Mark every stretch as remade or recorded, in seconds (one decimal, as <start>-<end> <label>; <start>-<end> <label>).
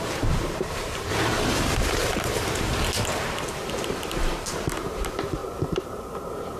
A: 0.0-2.0 remade; 2.0-3.9 recorded; 3.9-5.4 remade; 5.4-6.0 recorded; 6.0-6.6 remade